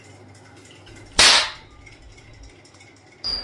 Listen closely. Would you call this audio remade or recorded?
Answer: recorded